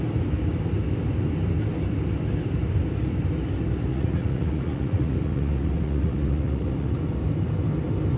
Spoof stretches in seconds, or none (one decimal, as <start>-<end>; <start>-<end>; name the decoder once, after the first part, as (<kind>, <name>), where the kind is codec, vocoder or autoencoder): 3.9-6.9 (vocoder, Vocos)